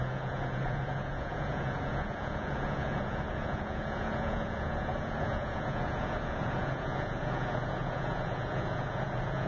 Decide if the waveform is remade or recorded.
remade